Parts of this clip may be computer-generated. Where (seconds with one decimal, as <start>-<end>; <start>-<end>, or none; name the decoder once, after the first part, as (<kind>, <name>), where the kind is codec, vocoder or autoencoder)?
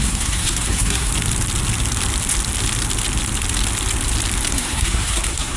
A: 0.0-1.1 (codec, SNAC); 4.5-5.6